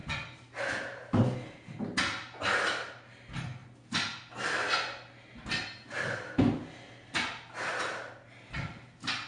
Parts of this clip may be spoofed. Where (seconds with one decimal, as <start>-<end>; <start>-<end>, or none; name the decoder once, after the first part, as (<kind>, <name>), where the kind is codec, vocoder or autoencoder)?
none